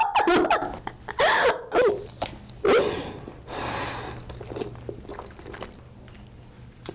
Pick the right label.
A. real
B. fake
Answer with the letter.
A